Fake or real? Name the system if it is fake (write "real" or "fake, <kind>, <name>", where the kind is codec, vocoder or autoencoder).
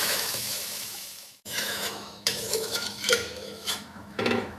fake, autoencoder, DAC-VAE